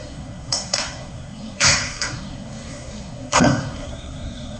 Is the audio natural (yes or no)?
no